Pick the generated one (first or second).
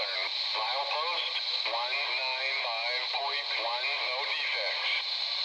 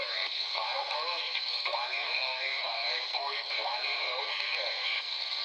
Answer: second